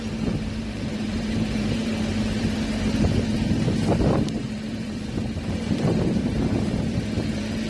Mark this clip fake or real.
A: fake